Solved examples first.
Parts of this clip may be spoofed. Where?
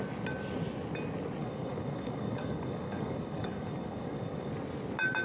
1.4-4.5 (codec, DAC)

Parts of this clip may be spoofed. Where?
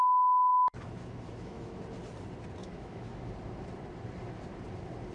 0.5-1.8 (autoencoder, DAC-VAE); 2.6-3.3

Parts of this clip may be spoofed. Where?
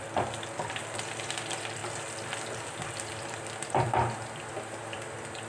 0.0-1.8 (vocoder, BigVGAN v2); 2.8-5.5